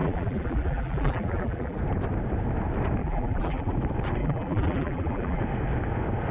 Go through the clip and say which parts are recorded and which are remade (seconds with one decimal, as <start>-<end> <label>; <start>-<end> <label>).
0.0-1.8 remade; 1.8-3.0 recorded; 3.0-3.7 remade; 3.7-4.2 recorded; 4.2-5.4 remade; 5.4-6.3 recorded